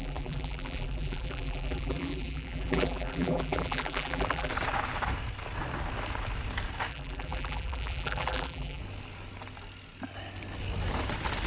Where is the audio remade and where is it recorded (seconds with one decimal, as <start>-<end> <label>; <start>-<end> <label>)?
0.0-4.5 remade; 4.5-6.9 recorded; 6.9-8.8 remade; 8.8-11.5 recorded